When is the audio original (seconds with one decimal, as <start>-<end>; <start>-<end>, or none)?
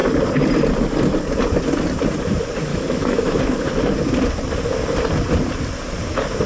0.0-2.7; 3.4-6.5